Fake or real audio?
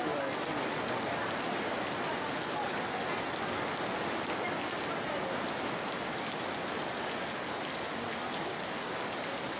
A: real